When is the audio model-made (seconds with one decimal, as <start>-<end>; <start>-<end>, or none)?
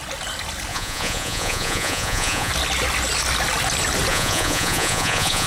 0.7-2.5; 4.1-5.5